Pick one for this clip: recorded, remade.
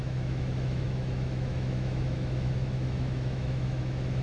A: remade